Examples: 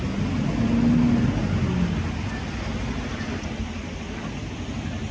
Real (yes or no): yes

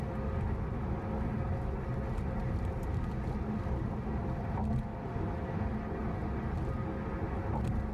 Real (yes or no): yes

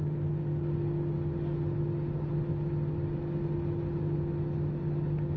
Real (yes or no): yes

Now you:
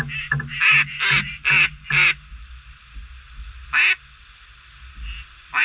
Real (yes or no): yes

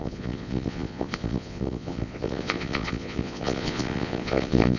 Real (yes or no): no